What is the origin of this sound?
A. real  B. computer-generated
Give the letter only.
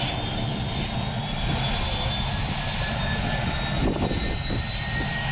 A